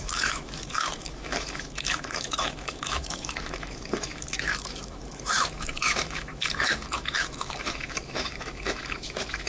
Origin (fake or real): fake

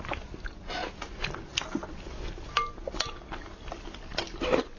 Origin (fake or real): real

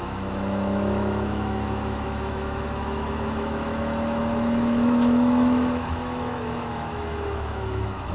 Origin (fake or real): fake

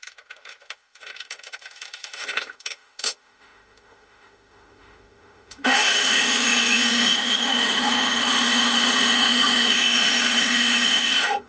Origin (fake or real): fake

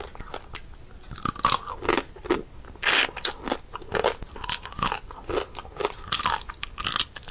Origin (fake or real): real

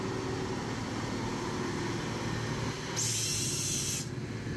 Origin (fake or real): real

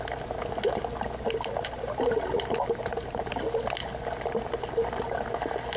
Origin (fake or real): real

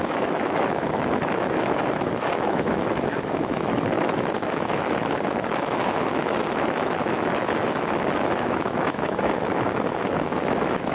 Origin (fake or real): fake